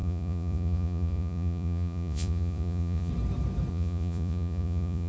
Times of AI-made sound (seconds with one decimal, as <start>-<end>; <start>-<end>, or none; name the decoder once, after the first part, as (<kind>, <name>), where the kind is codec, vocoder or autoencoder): 0.0-3.1 (vocoder, Vocos); 3.7-5.1